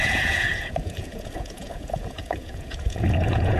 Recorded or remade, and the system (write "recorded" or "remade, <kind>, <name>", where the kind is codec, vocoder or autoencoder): remade, vocoder, Vocos